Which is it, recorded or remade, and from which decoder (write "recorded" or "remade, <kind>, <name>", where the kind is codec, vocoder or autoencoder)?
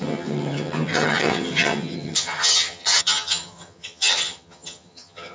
remade, vocoder, HiFi-GAN